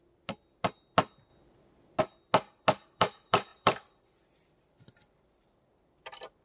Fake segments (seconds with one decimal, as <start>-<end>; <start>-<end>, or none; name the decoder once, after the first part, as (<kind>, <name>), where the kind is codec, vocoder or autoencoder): 3.5-5.9 (vocoder, BigVGAN v2)